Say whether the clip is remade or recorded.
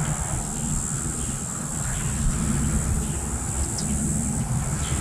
recorded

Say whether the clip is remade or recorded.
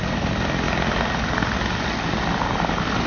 recorded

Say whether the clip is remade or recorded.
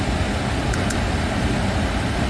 recorded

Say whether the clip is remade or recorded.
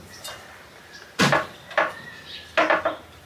recorded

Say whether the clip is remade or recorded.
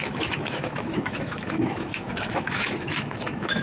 remade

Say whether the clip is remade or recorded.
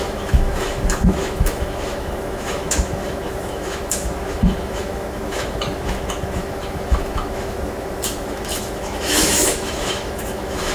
remade